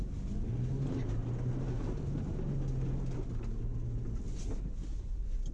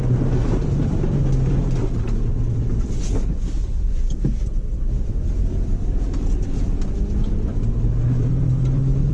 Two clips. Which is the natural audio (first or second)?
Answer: first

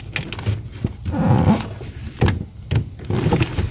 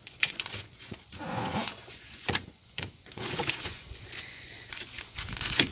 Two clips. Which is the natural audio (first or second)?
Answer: first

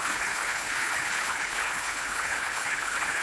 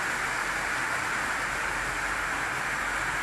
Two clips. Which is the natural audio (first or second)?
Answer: second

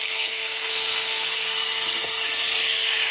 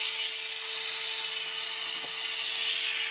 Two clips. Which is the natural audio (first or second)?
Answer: second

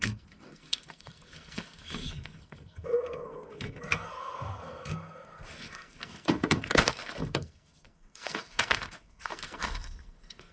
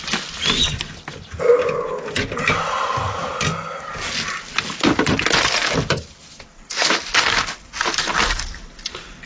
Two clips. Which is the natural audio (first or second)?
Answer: second